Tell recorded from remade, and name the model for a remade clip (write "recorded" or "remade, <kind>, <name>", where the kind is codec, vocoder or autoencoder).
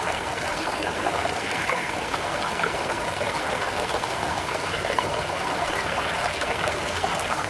remade, codec, SNAC